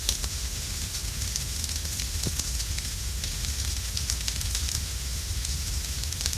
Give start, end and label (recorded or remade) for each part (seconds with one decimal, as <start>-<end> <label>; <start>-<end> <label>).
0.0-6.4 remade